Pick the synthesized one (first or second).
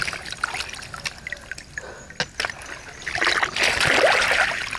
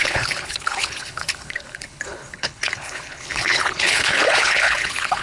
second